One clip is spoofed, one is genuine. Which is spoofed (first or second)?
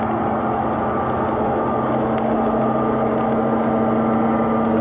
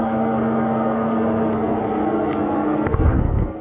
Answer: second